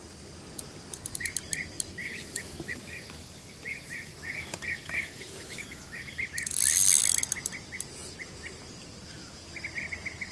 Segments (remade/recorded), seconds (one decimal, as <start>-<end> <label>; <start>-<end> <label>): 0.0-2.0 recorded; 2.0-6.2 remade; 6.2-10.3 recorded